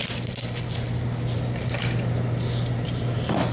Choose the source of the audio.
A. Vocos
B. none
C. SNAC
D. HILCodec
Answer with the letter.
B